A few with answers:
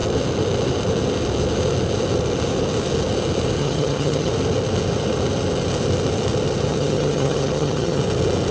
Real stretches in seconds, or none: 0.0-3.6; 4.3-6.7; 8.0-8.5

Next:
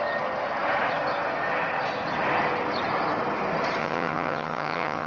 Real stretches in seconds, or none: 0.0-3.8

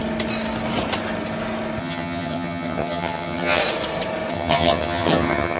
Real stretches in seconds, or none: 0.0-1.8; 3.6-4.3

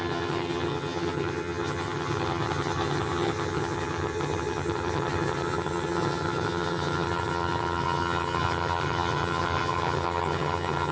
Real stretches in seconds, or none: none

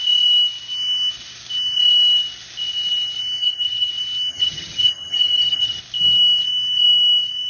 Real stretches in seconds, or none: 0.0-3.4; 3.9-4.3; 5.8-7.5

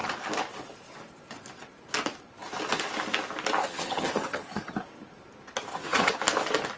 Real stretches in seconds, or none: 0.0-3.6; 4.7-5.7; 6.2-6.8

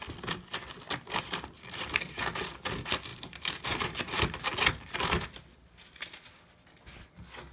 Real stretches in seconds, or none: 0.0-7.5

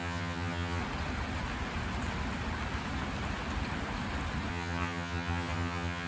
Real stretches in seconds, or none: 0.8-4.5